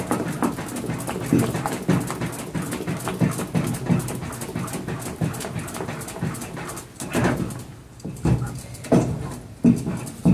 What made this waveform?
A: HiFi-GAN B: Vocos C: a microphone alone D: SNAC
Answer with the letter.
C